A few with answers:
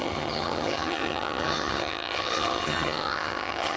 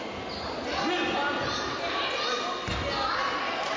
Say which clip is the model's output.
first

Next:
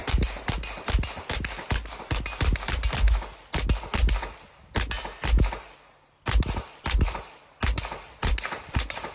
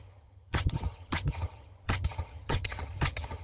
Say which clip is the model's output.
second